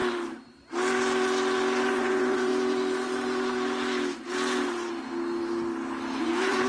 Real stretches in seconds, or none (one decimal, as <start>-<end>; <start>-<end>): 0.0-1.9; 2.5-6.2